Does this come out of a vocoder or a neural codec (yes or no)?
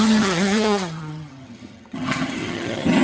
yes